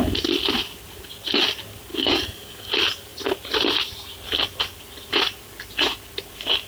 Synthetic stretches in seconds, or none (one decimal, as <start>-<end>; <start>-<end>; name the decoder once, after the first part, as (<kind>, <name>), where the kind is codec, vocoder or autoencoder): 1.9-2.7 (codec, DAC)